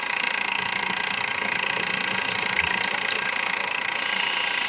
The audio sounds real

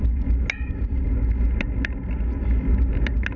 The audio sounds real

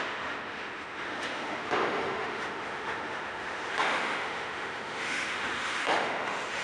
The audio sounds fake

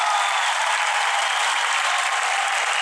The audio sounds fake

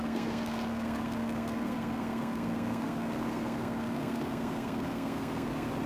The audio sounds fake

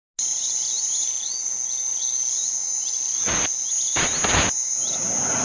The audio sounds real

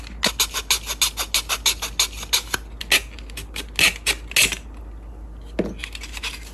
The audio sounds real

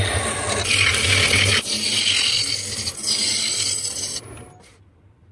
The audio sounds real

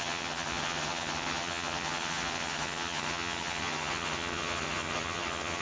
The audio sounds fake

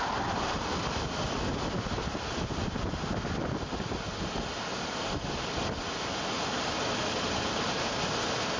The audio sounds real